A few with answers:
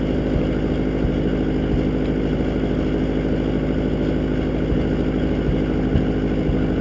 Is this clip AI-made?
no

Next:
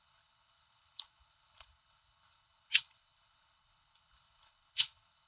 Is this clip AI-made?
yes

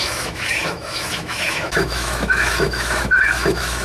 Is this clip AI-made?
yes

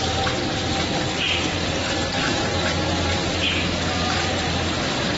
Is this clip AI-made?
no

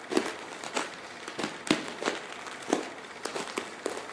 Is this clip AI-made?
no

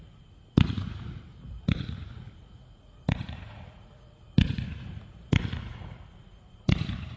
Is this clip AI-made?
yes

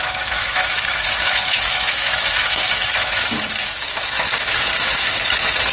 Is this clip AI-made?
yes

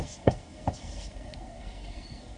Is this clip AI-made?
yes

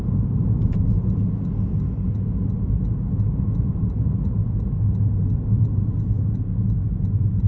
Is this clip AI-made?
no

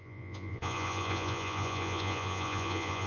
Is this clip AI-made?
yes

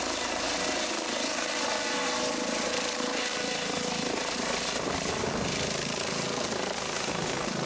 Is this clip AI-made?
no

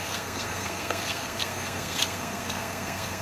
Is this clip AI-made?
yes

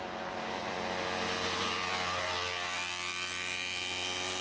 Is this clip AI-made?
no